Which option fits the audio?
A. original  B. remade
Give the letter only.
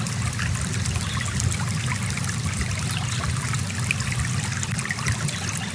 A